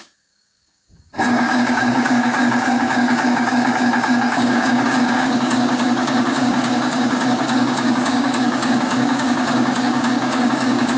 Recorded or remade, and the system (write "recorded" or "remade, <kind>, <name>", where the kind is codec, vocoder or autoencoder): remade, codec, DAC